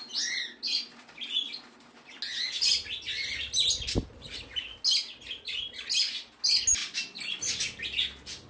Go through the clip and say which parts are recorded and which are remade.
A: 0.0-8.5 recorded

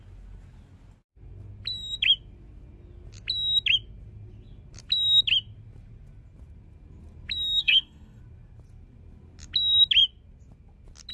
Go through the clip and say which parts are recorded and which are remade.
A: 0.0-7.6 recorded; 7.6-8.2 remade; 8.2-11.1 recorded

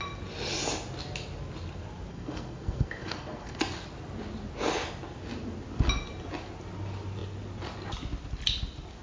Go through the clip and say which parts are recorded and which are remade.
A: 0.0-2.1 recorded; 2.1-3.6 remade; 3.6-9.0 recorded

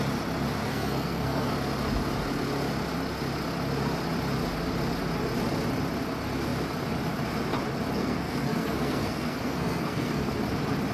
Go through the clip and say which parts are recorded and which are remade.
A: 0.0-0.7 recorded; 0.7-1.5 remade; 1.5-8.0 recorded; 8.0-10.3 remade; 10.3-10.9 recorded

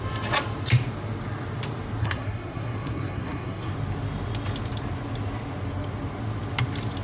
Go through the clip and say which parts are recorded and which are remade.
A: 0.0-2.0 recorded; 2.0-3.7 remade; 3.7-7.0 recorded